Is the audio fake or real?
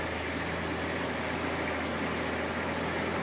real